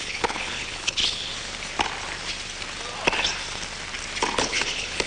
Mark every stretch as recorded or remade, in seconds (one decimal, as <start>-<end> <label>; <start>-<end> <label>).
0.0-1.3 remade; 1.3-4.4 recorded; 4.4-5.1 remade